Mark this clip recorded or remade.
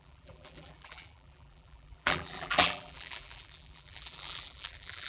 remade